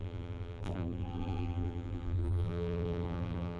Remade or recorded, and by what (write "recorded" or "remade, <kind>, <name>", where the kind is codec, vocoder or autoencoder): remade, vocoder, BigVGAN v2